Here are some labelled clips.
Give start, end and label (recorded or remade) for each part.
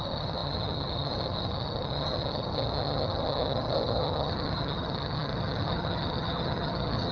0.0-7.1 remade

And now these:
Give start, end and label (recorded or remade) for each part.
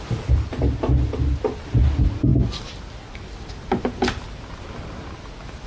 0.0-5.7 recorded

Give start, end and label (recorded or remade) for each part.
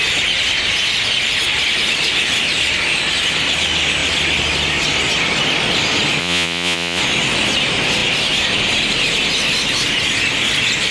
0.0-6.2 recorded; 6.2-7.0 remade; 7.0-10.9 recorded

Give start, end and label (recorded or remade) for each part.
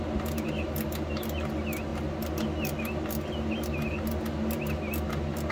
0.0-5.5 recorded